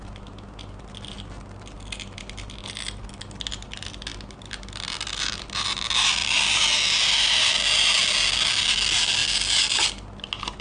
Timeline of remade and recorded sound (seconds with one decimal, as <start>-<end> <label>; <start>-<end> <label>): 0.0-10.6 recorded